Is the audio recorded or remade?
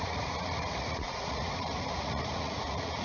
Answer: remade